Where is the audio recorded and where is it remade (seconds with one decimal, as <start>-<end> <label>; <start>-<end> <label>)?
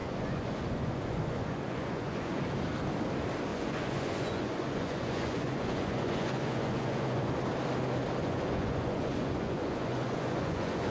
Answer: 0.0-2.4 remade; 2.4-3.5 recorded; 3.5-7.3 remade; 7.3-8.2 recorded; 8.2-10.9 remade